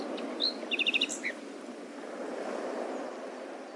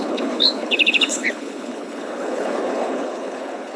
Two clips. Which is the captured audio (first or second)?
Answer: first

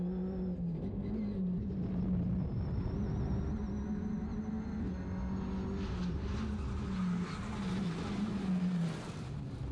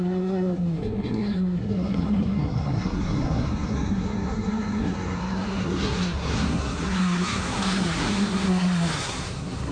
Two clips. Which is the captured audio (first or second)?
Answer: first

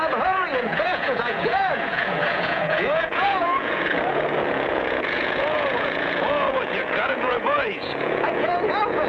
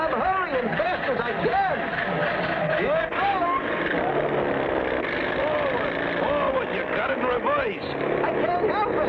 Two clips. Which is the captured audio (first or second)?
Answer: second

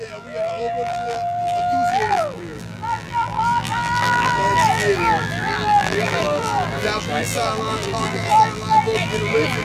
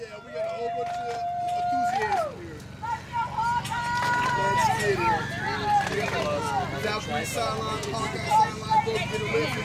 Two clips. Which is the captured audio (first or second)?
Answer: second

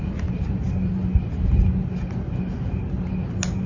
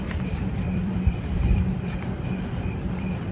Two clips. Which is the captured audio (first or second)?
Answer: first